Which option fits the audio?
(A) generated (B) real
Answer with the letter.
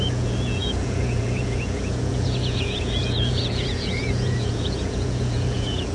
A